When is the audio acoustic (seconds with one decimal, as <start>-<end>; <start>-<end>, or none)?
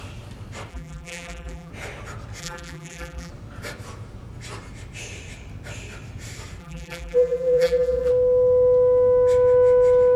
0.0-0.7; 1.7-2.4; 3.3-6.6; 8.1-10.2